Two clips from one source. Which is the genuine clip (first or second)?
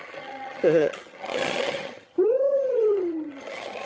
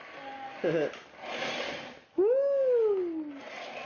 second